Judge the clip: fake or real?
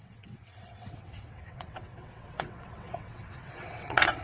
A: fake